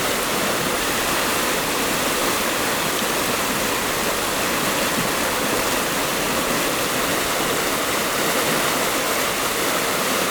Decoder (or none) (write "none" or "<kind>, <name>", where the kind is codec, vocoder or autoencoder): none